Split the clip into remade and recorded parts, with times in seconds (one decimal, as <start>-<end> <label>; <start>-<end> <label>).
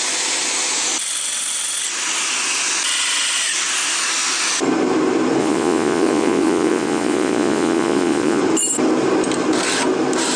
0.0-5.4 recorded; 5.4-8.4 remade; 8.4-10.4 recorded